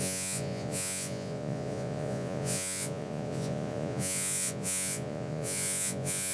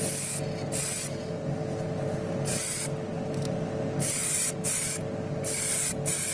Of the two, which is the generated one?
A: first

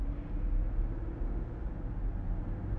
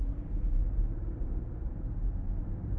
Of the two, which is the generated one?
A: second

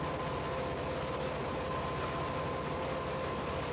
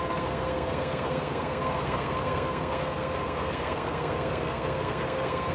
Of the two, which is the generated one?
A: second